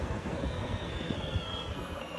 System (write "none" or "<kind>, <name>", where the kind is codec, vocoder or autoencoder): codec, SNAC